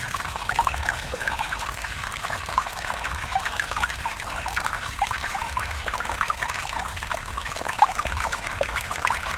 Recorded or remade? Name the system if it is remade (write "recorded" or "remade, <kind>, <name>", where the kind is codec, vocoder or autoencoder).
remade, autoencoder, DAC-VAE